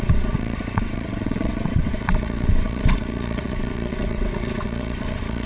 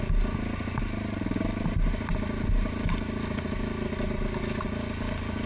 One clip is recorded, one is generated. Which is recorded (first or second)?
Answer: second